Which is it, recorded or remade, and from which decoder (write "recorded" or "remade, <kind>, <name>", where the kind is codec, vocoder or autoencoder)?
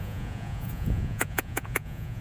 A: remade, vocoder, Vocos